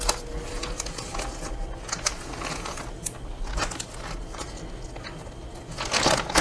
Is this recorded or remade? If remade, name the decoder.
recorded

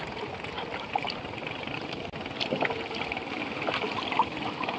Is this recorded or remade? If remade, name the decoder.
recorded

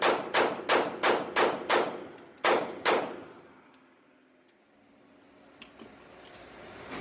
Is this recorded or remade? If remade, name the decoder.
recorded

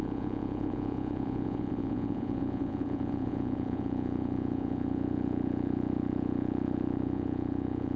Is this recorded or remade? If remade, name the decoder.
remade, vocoder, Vocos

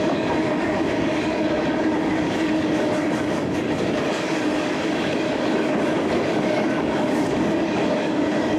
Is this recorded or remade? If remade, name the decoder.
remade, codec, DAC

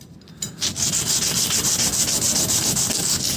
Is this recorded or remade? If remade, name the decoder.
recorded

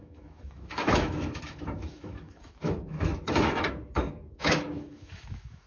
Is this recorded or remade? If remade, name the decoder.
remade, autoencoder, DAC-VAE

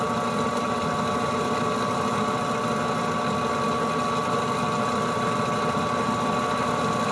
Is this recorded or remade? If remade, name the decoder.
recorded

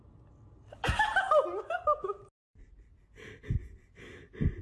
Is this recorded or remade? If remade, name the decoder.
recorded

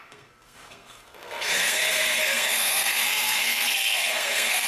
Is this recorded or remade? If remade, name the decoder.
remade, codec, SNAC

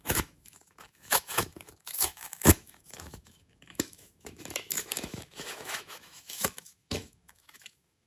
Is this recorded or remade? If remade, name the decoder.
remade, autoencoder, DAC-VAE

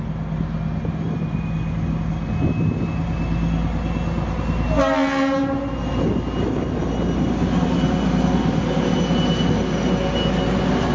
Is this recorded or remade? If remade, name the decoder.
recorded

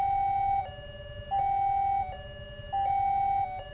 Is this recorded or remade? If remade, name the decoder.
recorded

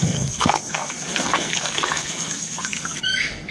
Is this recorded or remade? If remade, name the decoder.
remade, codec, SNAC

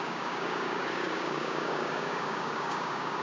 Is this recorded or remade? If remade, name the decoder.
remade, codec, DAC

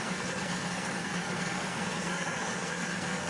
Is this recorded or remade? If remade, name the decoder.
remade, codec, SNAC